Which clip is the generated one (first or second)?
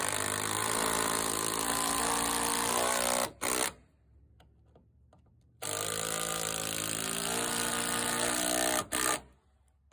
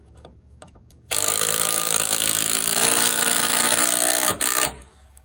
second